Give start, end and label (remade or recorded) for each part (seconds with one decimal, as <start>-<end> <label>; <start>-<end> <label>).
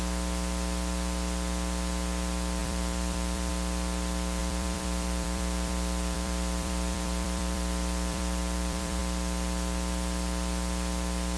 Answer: 0.0-2.6 recorded; 2.6-3.5 remade; 3.5-4.4 recorded; 4.4-9.0 remade; 9.0-11.4 recorded